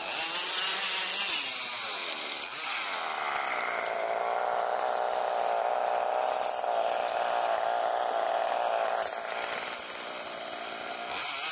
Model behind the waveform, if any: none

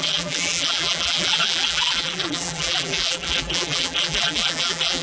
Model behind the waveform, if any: vocoder, BigVGAN v2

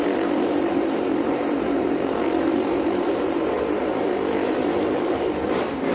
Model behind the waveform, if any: vocoder, BigVGAN v2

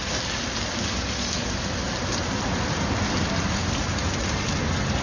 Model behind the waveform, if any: none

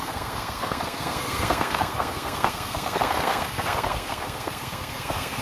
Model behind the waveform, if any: codec, SNAC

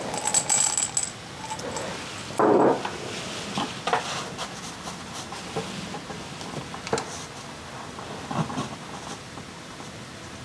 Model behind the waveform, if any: none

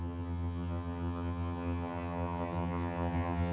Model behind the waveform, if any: vocoder, HiFi-GAN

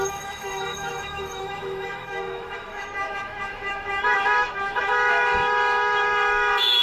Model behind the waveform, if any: autoencoder, DAC-VAE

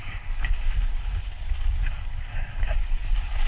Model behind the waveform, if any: none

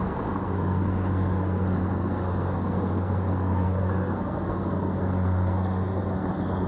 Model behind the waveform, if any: codec, SNAC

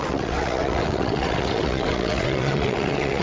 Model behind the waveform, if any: vocoder, WaveNeXt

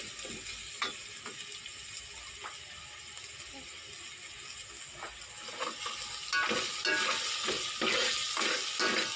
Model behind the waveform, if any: none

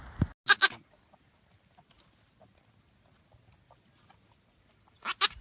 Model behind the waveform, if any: none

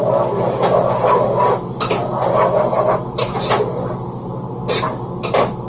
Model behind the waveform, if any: none